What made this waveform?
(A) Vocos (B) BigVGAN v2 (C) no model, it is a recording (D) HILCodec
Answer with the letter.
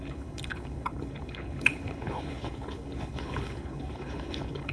D